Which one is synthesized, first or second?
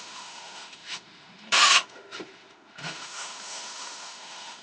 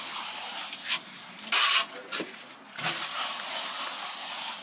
first